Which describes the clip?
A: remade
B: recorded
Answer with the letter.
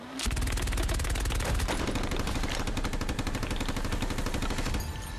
A